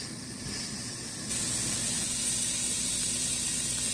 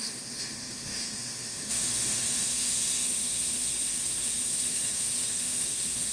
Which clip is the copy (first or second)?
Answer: second